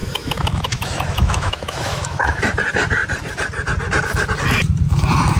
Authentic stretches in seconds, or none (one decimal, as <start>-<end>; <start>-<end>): 2.4-5.4